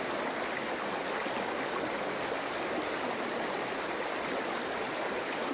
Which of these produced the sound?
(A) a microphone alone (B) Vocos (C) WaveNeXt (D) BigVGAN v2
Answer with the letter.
A